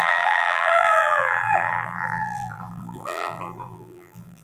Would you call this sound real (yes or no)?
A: no